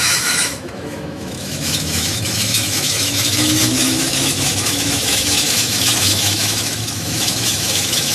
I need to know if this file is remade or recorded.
remade